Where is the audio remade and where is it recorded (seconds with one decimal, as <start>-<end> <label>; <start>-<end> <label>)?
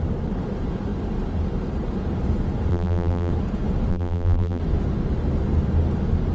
0.0-2.7 recorded; 2.7-3.3 remade; 3.3-3.9 recorded; 3.9-4.6 remade; 4.6-6.3 recorded